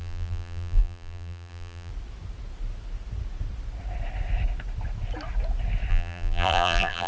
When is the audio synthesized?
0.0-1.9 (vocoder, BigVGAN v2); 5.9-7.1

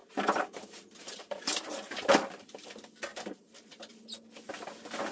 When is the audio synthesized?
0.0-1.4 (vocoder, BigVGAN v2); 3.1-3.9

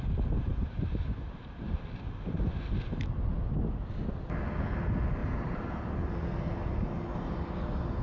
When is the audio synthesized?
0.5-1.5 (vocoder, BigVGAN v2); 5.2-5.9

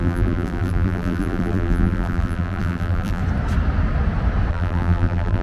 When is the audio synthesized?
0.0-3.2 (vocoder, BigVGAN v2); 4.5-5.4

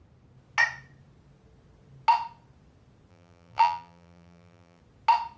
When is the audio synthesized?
3.1-4.8 (vocoder, BigVGAN v2)